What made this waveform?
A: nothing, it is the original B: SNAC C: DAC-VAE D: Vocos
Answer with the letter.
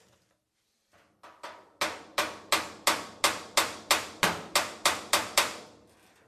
A